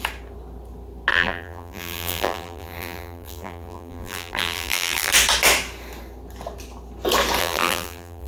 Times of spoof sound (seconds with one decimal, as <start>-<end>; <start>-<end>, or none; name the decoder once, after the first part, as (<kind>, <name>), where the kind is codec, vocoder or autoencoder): 1.1-5.1 (vocoder, BigVGAN v2); 7.4-8.3